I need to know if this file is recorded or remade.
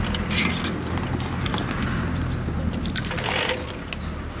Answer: recorded